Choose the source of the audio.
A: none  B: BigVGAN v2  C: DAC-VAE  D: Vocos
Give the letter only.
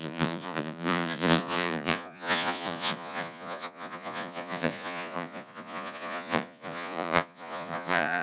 D